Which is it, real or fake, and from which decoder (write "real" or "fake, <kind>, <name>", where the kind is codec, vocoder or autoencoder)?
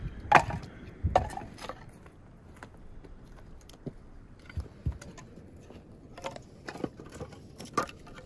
real